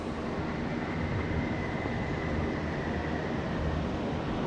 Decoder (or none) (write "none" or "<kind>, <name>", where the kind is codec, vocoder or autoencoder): vocoder, BigVGAN v2